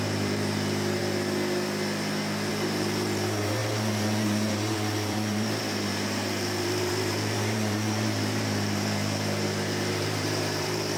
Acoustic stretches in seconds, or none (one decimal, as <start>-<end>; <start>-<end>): 1.0-2.5